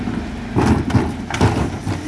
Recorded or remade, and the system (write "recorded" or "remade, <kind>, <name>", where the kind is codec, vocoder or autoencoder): recorded